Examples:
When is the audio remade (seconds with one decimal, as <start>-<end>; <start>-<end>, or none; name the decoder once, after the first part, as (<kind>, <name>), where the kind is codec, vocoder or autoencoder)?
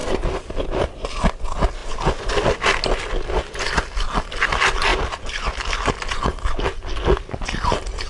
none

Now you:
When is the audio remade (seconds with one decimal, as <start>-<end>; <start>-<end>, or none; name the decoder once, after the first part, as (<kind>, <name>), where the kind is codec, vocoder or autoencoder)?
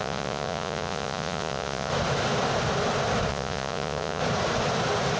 0.0-1.9 (vocoder, Vocos); 3.3-4.2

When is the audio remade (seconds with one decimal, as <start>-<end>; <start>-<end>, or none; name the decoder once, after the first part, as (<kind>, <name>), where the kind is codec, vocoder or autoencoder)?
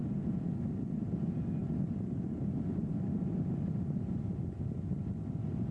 0.0-0.5 (vocoder, Vocos)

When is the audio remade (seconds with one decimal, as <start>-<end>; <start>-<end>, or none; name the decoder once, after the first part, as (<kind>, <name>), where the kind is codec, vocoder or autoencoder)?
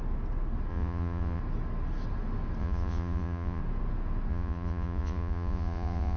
0.7-1.4 (vocoder, Vocos); 2.6-3.6; 4.3-6.2